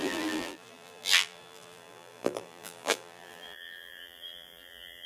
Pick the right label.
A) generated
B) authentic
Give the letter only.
A